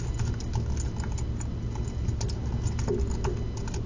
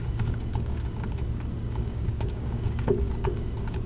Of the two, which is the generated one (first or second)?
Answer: second